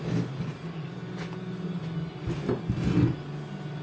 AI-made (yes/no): no